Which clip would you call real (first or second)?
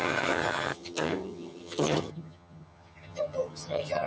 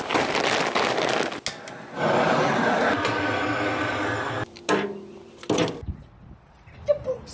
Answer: second